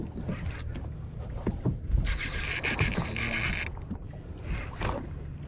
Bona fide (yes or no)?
yes